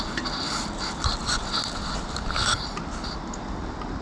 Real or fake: real